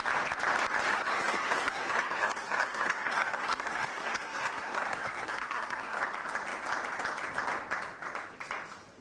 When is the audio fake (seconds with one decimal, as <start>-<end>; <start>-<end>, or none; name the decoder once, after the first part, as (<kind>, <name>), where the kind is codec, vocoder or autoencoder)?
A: 0.9-6.0 (codec, SNAC)